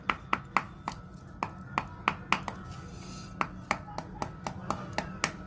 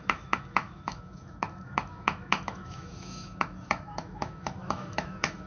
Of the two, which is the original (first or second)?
first